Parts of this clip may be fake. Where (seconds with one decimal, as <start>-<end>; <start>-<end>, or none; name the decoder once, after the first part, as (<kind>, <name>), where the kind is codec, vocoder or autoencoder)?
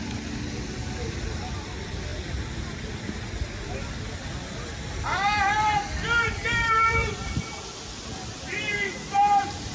0.0-2.1 (vocoder, BigVGAN v2); 4.9-9.7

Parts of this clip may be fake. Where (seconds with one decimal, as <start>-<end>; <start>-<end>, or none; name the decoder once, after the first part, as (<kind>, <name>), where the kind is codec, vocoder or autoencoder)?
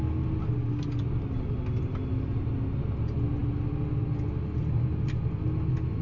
none